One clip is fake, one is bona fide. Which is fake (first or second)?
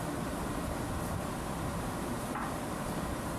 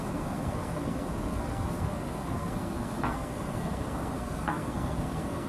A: second